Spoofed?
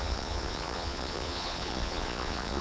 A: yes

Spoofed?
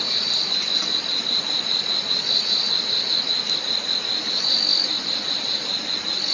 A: no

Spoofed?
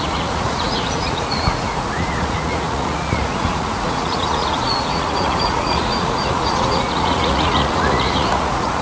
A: yes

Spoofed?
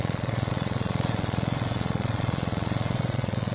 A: yes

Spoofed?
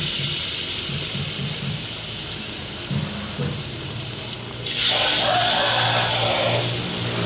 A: no